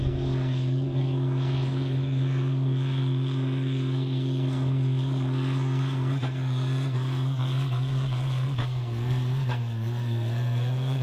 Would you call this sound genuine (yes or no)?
no